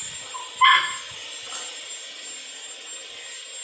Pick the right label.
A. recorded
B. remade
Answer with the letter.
A